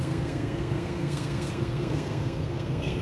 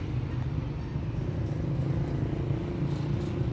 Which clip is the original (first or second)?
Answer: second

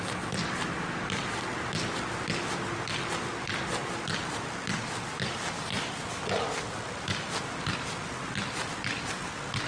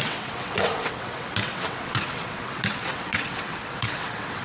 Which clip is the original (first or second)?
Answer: first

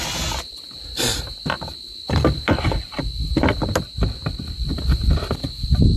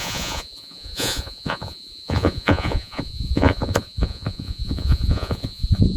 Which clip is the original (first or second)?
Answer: first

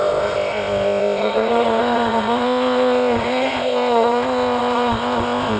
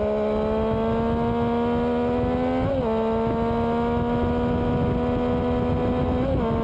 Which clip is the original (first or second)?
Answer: second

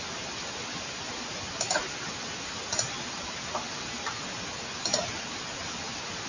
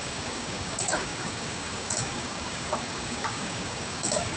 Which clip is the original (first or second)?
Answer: first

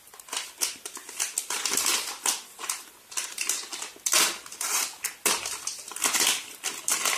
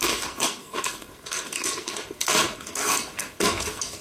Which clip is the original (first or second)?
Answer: first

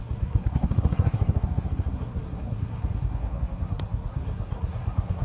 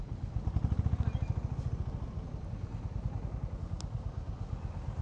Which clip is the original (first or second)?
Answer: second